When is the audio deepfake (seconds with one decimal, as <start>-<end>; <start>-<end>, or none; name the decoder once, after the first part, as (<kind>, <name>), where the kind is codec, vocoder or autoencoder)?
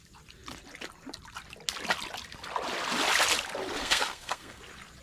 3.8-4.6 (codec, SNAC)